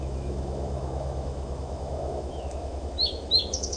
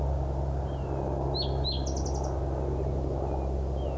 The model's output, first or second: first